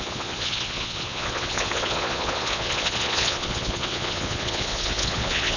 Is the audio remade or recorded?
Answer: remade